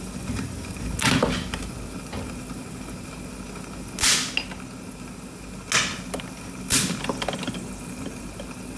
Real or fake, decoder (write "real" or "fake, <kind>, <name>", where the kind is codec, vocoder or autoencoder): real